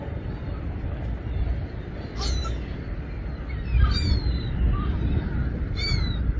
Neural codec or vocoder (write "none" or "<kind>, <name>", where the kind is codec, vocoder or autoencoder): none